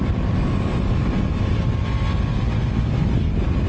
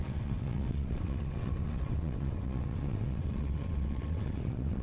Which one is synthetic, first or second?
second